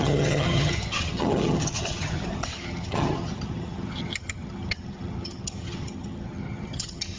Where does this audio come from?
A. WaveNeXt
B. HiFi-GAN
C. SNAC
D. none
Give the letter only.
B